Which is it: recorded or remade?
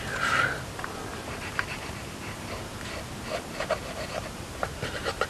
remade